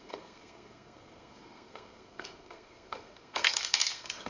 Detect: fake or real fake